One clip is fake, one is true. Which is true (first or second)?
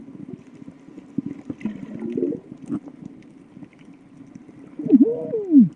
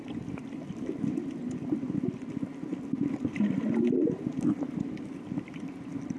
first